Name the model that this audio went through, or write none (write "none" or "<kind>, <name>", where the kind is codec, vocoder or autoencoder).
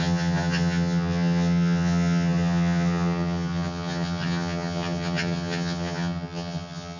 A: vocoder, HiFi-GAN